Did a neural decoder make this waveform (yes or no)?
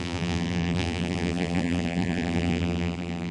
yes